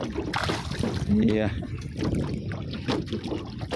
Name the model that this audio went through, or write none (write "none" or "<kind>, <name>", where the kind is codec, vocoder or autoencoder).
none